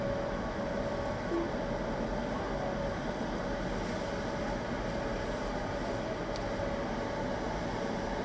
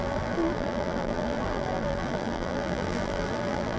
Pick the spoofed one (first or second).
second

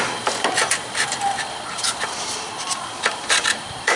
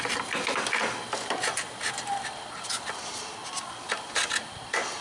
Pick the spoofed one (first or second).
first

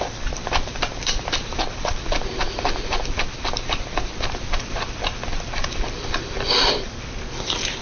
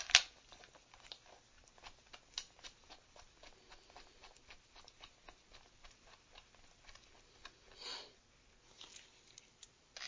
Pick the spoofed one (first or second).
first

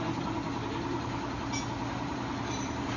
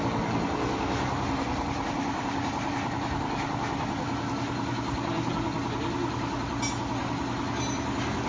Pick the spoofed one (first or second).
first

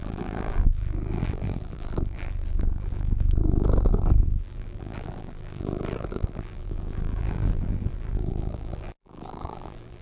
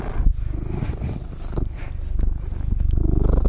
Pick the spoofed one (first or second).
first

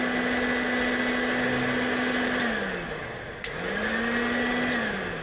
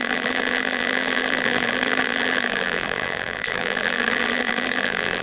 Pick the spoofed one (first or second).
second